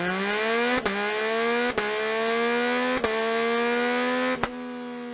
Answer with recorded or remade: recorded